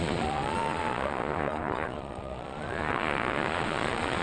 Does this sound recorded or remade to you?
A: remade